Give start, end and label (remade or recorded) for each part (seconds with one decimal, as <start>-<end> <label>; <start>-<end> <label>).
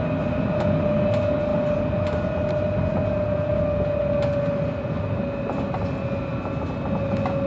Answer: 0.0-7.5 recorded